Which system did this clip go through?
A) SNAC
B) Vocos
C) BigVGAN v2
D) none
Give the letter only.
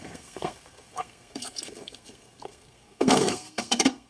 A